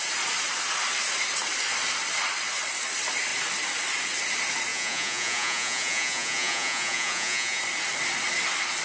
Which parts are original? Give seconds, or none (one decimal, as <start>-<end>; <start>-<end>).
0.0-4.7; 7.6-8.8